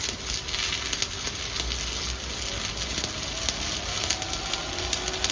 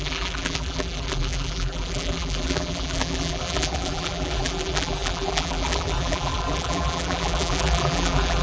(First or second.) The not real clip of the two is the second